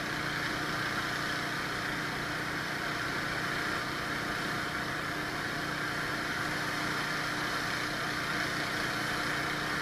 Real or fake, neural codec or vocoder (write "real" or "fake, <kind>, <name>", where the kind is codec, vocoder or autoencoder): real